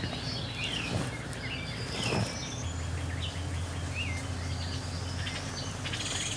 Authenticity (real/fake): real